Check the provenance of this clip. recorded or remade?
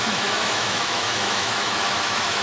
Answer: remade